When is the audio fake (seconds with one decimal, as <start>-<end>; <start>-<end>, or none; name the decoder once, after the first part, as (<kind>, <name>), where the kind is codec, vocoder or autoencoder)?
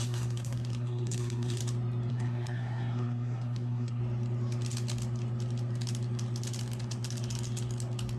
0.0-1.6 (codec, SNAC); 2.1-4.0